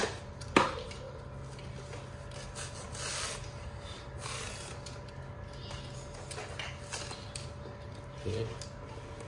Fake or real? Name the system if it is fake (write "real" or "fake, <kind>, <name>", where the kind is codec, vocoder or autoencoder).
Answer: real